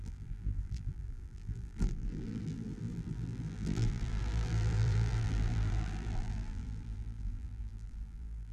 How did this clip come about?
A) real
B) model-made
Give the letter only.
B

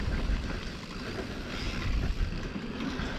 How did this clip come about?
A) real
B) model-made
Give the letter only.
B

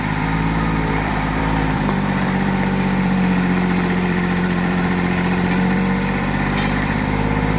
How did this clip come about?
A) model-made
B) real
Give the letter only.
A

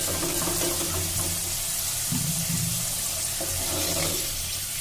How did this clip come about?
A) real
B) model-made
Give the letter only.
A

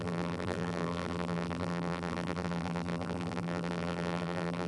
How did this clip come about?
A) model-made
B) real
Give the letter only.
A